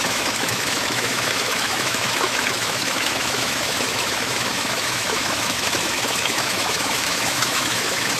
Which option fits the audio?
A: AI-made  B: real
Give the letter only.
A